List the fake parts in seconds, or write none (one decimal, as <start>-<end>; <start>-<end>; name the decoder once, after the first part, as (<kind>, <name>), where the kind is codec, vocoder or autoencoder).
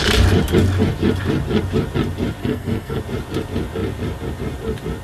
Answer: 2.4-3.0 (codec, SNAC)